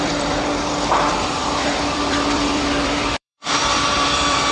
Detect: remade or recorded remade